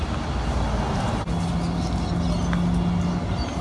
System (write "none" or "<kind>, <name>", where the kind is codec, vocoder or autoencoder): none